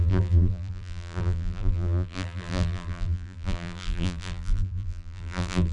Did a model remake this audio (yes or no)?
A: yes